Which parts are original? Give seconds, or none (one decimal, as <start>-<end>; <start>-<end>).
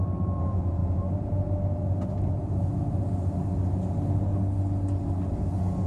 0.0-5.9